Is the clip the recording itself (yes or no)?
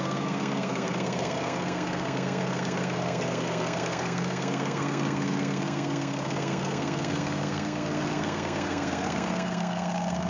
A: no